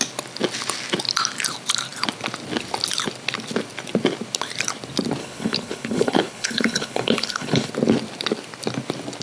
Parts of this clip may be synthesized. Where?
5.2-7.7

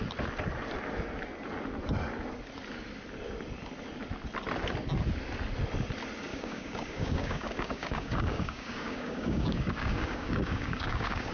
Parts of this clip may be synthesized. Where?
6.3-11.3

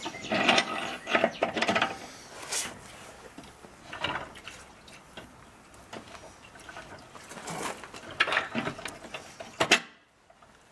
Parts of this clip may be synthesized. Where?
1.1-1.8

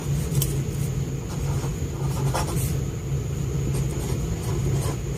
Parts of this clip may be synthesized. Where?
none

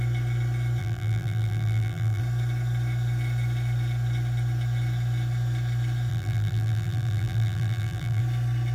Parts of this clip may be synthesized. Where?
0.8-2.2; 6.1-8.2

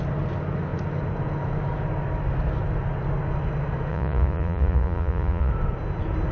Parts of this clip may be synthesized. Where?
3.9-5.5